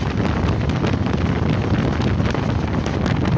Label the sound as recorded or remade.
recorded